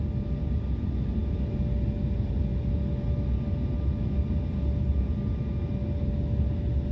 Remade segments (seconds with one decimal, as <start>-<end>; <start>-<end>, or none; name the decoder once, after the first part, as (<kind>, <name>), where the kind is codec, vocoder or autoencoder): none